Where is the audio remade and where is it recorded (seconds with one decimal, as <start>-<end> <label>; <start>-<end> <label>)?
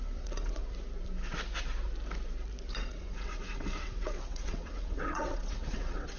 0.0-0.6 remade; 0.6-2.7 recorded; 2.7-6.2 remade